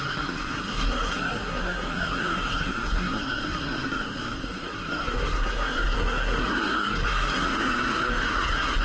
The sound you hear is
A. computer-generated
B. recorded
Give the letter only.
A